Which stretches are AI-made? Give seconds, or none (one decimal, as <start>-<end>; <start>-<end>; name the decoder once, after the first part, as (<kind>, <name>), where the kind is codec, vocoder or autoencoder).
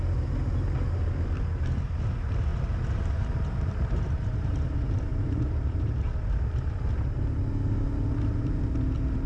2.5-4.5 (vocoder, BigVGAN v2); 5.1-7.5